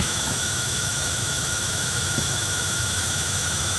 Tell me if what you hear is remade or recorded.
remade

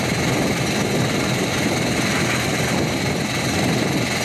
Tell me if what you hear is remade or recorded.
recorded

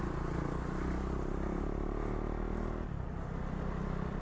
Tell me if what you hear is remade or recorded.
recorded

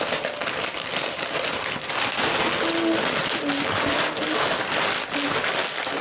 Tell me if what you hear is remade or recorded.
recorded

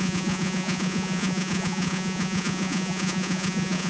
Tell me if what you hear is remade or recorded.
remade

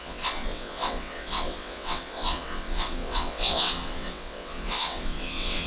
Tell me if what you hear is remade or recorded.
remade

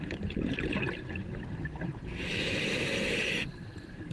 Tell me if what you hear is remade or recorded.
remade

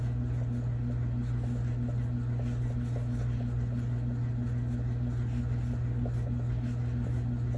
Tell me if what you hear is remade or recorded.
recorded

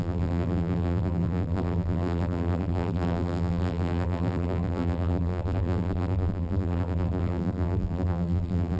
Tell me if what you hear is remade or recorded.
remade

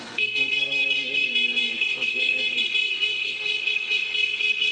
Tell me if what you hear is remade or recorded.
remade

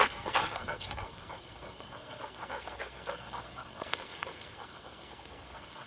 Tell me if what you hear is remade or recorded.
remade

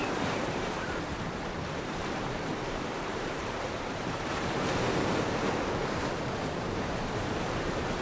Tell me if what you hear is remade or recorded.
remade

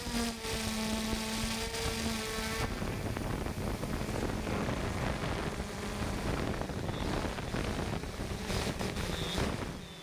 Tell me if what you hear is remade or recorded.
recorded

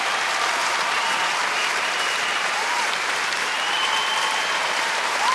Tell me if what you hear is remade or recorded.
remade